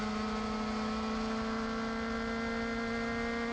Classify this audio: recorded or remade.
recorded